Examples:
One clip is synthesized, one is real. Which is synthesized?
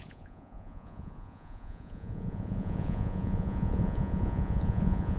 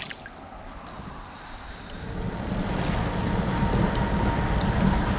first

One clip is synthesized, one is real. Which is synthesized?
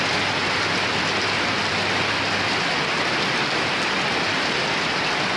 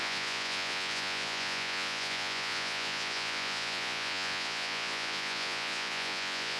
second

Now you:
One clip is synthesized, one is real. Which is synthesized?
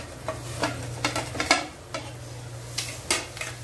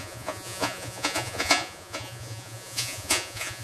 second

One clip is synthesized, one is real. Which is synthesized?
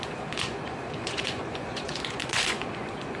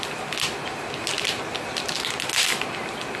first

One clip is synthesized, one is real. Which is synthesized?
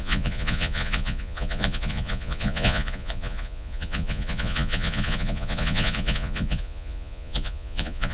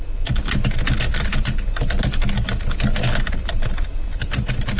first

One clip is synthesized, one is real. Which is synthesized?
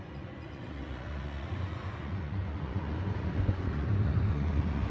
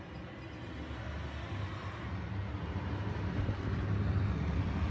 first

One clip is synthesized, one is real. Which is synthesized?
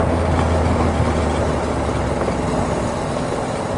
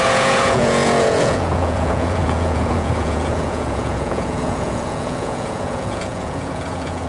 second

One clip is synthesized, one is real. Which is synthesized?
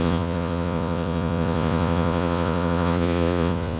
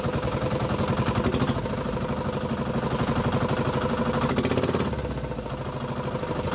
first